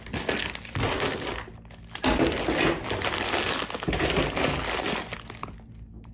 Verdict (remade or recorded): recorded